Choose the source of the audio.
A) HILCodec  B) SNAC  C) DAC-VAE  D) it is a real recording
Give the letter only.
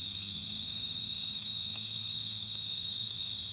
C